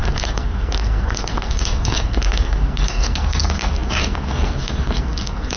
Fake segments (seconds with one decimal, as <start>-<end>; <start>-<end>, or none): 0.0-5.6